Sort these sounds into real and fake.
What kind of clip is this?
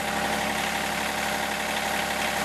real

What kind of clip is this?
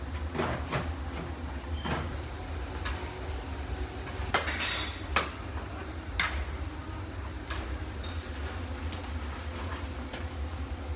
real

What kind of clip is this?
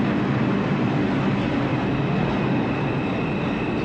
real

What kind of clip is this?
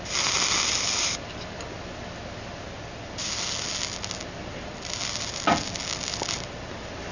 real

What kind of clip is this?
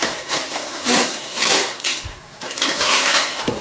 fake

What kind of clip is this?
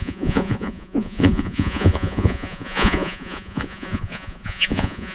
fake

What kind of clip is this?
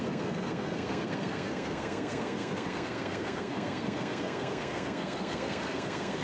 fake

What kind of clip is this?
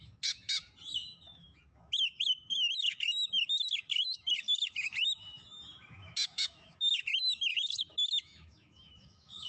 fake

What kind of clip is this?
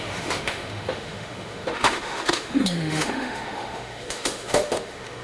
fake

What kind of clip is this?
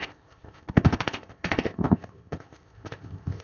fake